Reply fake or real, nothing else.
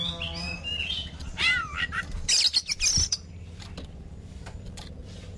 real